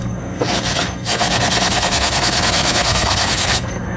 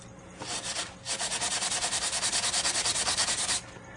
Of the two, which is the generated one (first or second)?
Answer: first